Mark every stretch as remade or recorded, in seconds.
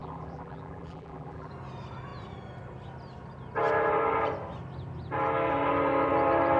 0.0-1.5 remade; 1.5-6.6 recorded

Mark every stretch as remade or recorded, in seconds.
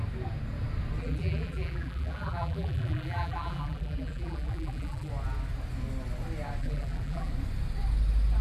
0.0-1.0 recorded; 1.0-5.1 remade; 5.1-6.6 recorded; 6.6-7.3 remade; 7.3-8.4 recorded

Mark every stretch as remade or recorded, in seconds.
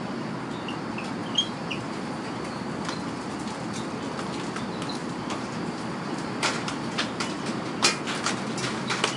0.0-1.2 recorded; 1.2-2.7 remade; 2.7-5.0 recorded; 5.0-8.0 remade; 8.0-9.2 recorded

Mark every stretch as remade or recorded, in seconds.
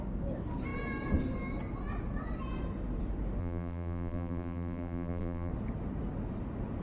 0.0-3.4 recorded; 3.4-5.5 remade; 5.5-6.8 recorded